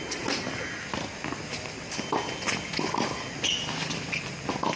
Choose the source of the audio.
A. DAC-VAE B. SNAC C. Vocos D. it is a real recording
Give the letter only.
D